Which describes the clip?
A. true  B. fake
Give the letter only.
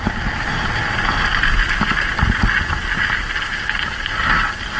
A